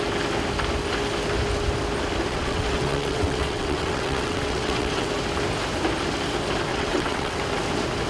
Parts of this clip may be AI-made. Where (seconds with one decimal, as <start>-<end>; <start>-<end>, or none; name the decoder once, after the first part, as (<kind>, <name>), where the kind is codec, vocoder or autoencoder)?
2.3-5.1 (vocoder, WaveNeXt); 6.7-7.4